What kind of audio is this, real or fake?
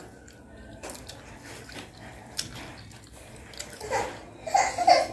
real